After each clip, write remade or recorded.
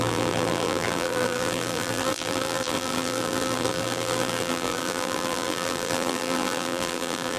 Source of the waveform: remade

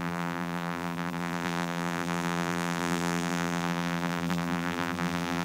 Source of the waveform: remade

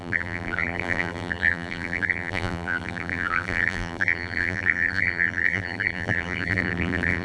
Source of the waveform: remade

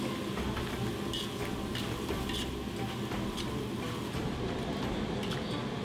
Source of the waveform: recorded